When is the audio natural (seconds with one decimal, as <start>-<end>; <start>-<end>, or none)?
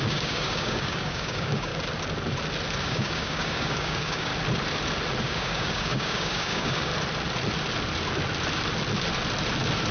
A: 1.7-2.8; 4.3-5.2; 6.9-9.9